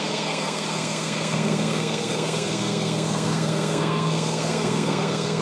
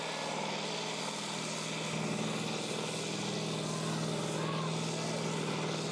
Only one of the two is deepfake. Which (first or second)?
first